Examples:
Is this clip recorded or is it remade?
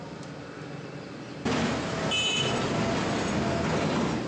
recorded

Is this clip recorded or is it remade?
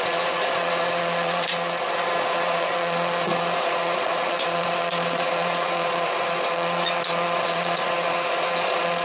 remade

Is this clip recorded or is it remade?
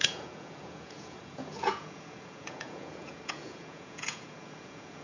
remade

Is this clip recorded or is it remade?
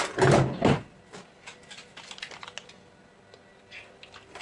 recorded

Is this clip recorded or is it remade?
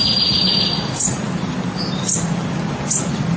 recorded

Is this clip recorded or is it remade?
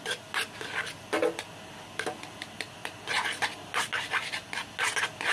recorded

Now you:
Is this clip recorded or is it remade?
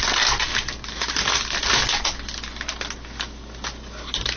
recorded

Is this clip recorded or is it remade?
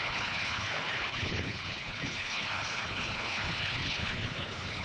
remade